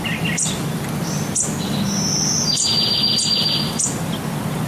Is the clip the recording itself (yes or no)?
yes